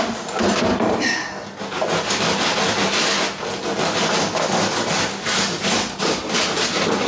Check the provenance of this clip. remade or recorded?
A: recorded